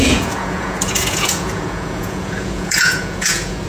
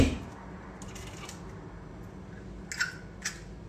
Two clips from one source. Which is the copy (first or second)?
first